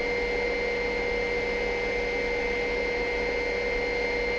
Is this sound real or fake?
real